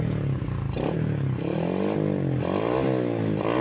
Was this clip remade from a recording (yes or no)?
no